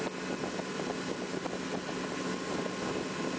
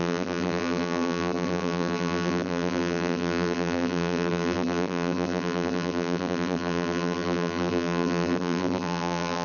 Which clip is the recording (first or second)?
first